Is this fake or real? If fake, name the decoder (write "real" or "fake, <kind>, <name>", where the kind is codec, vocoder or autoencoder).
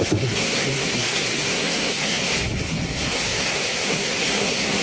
fake, codec, SNAC